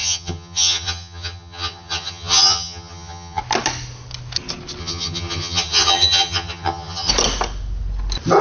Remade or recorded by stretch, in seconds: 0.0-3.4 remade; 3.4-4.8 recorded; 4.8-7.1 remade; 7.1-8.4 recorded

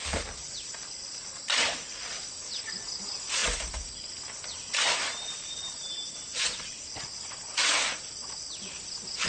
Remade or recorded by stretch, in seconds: 0.0-9.3 recorded

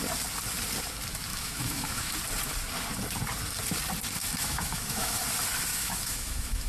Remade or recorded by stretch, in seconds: 0.0-1.3 recorded; 1.3-2.2 remade; 2.2-4.2 recorded; 4.2-5.2 remade; 5.2-5.7 recorded; 5.7-6.7 remade

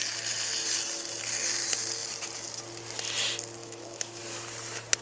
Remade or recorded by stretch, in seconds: 0.0-3.6 recorded; 3.6-4.2 remade; 4.2-5.0 recorded

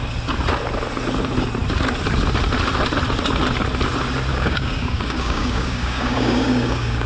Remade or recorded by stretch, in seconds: 0.0-4.3 recorded; 4.3-7.1 remade

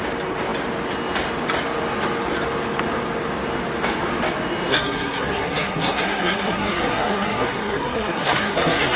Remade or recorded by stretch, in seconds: 0.0-4.7 recorded; 4.7-9.0 remade